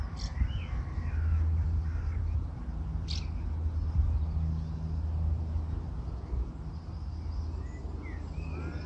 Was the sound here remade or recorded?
recorded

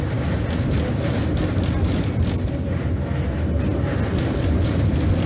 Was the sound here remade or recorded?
recorded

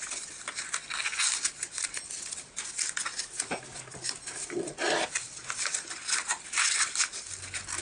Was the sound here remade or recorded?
recorded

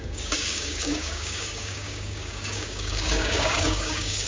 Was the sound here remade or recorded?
remade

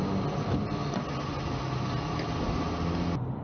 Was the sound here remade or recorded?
recorded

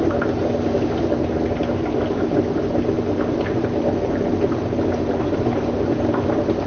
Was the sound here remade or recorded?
recorded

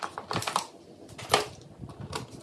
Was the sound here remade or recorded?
recorded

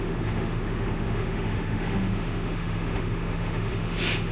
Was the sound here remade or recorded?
remade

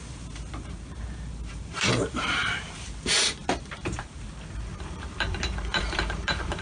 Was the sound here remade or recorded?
remade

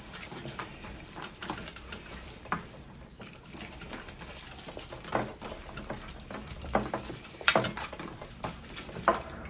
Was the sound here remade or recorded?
remade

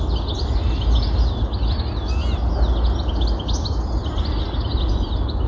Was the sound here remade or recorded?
recorded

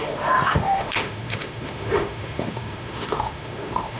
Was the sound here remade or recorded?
remade